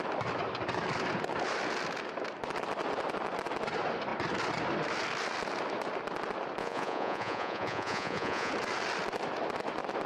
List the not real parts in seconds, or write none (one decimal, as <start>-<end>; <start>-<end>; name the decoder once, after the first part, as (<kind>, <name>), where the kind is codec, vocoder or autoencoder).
6.6-8.5 (vocoder, Vocos)